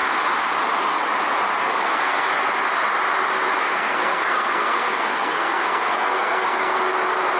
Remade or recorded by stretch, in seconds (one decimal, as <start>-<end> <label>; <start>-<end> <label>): 0.0-1.6 recorded; 1.6-2.3 remade; 2.3-3.6 recorded; 3.6-6.8 remade; 6.8-7.4 recorded